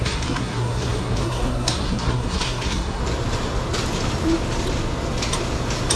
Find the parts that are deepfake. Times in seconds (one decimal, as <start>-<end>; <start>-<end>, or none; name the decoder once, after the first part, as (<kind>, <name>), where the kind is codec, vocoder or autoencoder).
0.0-3.0 (codec, SNAC)